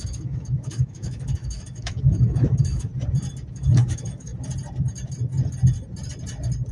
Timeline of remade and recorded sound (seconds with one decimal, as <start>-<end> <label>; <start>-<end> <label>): 0.0-2.9 remade; 2.9-3.5 recorded; 3.5-4.3 remade; 4.3-6.7 recorded